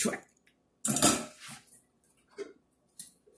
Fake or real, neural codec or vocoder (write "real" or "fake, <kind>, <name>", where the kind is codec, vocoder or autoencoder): real